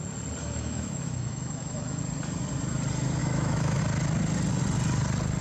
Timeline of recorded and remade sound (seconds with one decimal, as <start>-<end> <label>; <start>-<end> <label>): 0.0-0.4 recorded; 0.4-2.0 remade; 2.0-3.2 recorded; 3.2-3.8 remade; 3.8-5.4 recorded

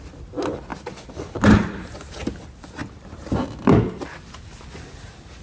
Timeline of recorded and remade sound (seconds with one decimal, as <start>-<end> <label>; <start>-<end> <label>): 0.0-5.4 recorded

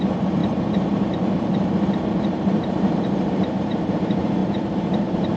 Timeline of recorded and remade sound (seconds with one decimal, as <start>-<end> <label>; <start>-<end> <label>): 0.0-5.4 remade

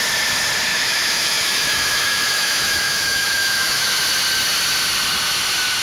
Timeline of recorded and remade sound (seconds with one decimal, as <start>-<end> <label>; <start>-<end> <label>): 0.0-0.7 recorded; 0.7-4.0 remade; 4.0-5.8 recorded

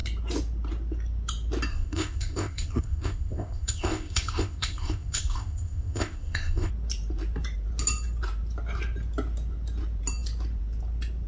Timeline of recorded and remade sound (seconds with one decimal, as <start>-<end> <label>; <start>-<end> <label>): 0.0-1.7 recorded; 1.7-6.7 remade; 6.7-11.3 recorded

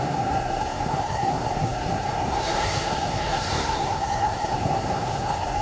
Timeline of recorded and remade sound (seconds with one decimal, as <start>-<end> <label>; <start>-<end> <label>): 0.0-5.6 remade